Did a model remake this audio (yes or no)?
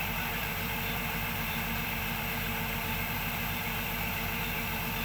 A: yes